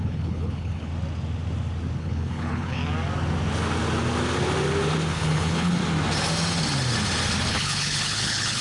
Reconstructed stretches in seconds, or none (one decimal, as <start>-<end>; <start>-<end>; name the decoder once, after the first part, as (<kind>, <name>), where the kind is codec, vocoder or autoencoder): 0.0-0.9 (codec, HILCodec); 2.0-2.8; 5.1-5.8; 7.5-8.6